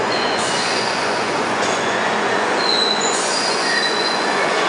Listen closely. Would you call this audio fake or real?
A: fake